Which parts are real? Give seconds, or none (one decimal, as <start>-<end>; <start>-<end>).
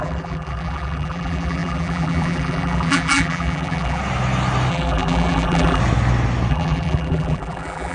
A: 4.0-4.7; 5.8-6.5